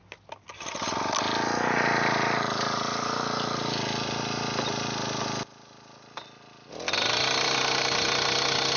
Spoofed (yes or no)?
no